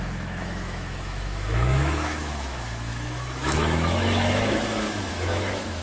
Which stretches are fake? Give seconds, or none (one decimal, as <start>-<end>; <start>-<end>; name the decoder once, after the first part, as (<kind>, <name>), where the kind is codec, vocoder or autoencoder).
0.0-5.8 (autoencoder, DAC-VAE)